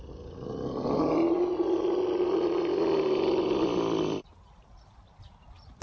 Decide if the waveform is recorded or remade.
recorded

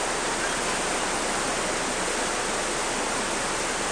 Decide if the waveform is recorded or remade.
recorded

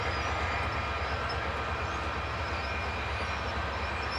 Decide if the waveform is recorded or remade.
recorded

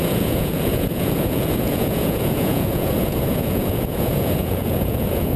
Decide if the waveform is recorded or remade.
remade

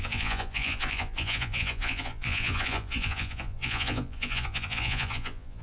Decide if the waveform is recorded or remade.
remade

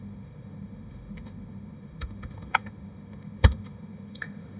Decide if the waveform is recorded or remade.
remade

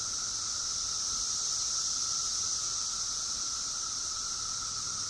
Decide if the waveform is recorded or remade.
recorded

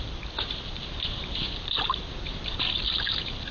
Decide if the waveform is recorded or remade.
recorded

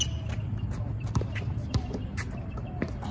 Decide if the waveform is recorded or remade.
recorded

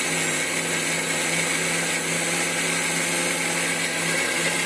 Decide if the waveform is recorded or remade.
recorded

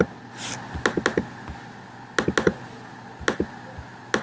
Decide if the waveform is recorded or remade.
recorded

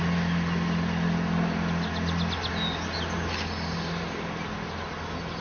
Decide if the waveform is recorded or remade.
recorded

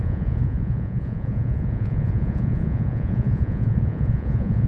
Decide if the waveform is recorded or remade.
remade